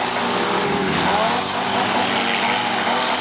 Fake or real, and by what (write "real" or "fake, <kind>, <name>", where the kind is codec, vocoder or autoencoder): real